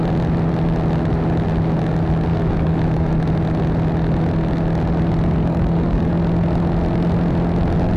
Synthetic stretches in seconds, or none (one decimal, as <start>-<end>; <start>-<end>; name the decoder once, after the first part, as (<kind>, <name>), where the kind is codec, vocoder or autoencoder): 2.3-3.1 (codec, DAC); 5.4-6.1